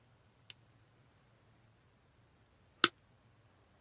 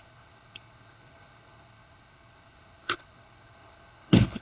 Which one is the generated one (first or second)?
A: second